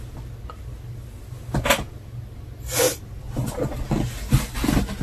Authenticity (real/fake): real